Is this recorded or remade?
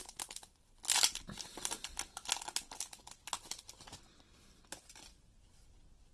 recorded